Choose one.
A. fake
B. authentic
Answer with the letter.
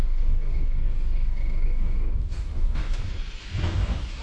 A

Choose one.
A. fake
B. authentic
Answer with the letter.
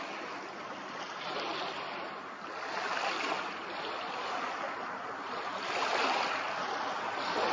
B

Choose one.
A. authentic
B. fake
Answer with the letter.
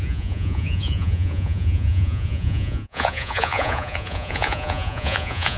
B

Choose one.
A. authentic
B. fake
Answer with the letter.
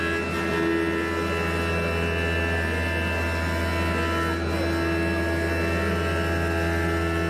A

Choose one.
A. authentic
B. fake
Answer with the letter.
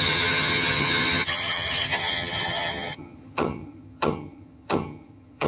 B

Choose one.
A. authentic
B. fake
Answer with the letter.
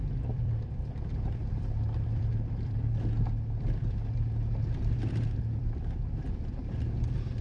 B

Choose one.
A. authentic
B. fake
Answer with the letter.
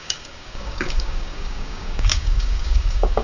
B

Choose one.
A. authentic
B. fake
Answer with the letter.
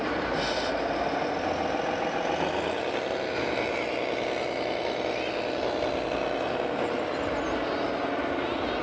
A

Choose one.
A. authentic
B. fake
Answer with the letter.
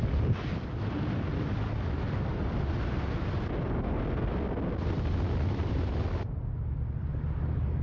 A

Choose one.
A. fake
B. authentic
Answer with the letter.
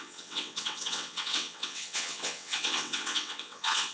A